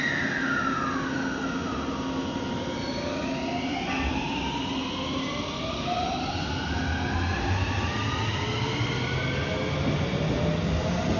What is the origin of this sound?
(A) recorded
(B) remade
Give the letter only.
A